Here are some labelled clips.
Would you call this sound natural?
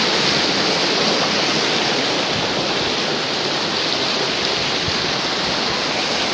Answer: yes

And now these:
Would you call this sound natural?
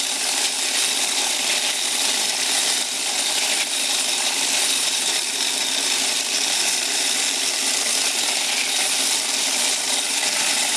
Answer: yes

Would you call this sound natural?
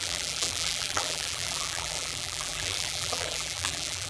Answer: no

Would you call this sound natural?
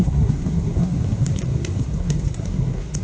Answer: no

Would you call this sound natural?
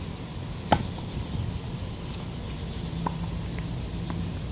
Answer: yes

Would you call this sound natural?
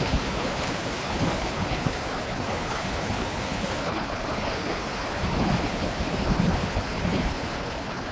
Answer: no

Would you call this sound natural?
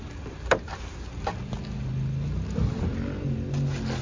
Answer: yes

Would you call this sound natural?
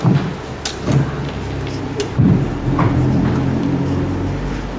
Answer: yes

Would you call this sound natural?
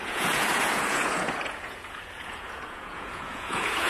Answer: no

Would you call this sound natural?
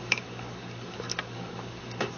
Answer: no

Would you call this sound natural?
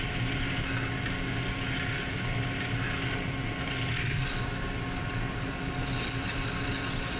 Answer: yes